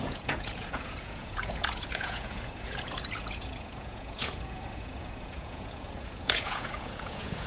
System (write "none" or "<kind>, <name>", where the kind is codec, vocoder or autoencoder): vocoder, Vocos